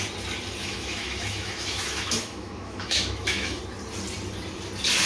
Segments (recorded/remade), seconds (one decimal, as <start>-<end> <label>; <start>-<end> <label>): 0.0-0.6 recorded; 0.6-3.6 remade; 3.6-5.1 recorded